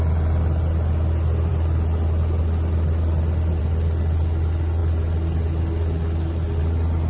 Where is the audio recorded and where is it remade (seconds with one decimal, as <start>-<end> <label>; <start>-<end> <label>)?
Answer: 0.0-7.1 recorded